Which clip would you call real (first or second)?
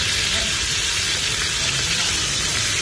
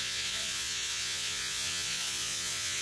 first